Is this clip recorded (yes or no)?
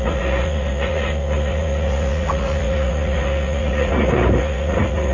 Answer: no